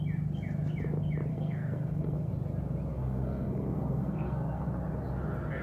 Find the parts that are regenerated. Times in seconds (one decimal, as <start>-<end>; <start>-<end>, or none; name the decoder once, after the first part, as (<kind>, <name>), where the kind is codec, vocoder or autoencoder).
1.3-2.3 (codec, SNAC); 2.9-4.7